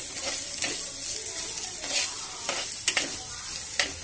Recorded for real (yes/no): yes